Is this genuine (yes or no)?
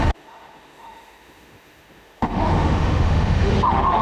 no